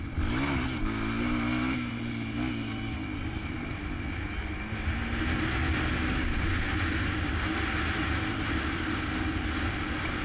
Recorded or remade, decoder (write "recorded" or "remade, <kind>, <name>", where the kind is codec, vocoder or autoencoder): recorded